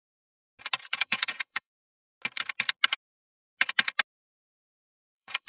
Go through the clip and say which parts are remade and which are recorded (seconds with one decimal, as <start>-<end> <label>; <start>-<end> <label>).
0.0-0.8 recorded; 0.8-1.7 remade; 1.7-5.0 recorded; 5.0-5.5 remade